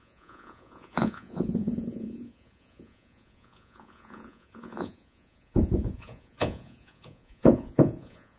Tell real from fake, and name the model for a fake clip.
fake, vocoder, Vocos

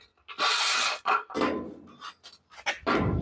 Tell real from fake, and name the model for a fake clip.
real